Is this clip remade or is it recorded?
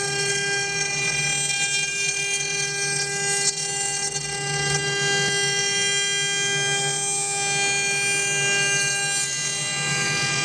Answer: recorded